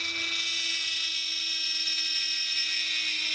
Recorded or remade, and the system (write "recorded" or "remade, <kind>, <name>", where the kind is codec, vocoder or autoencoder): recorded